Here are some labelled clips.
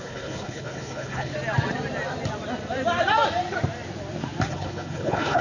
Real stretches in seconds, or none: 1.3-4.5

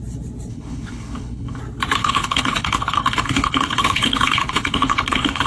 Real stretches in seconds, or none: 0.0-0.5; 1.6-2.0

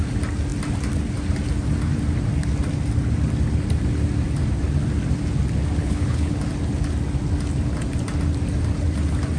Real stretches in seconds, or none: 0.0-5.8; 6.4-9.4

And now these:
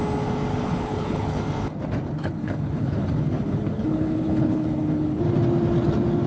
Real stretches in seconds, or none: 0.0-0.5; 1.4-2.2; 5.2-6.3

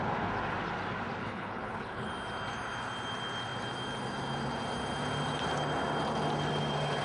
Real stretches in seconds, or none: 0.0-1.2; 2.1-7.0